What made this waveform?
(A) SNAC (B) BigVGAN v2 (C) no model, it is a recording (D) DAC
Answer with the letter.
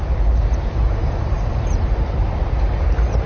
B